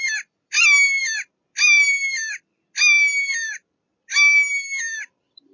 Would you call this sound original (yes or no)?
yes